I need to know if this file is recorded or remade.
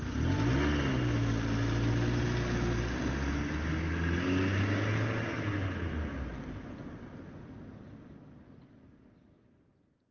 recorded